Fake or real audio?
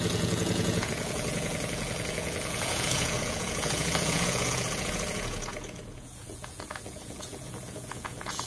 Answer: fake